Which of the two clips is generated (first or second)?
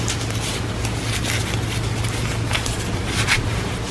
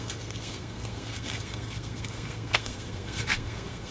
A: second